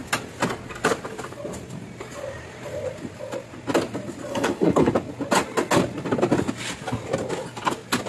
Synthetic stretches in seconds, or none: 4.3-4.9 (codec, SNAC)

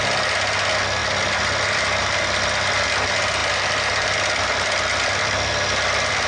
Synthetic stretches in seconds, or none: 1.0-2.0 (vocoder, BigVGAN v2); 3.4-5.5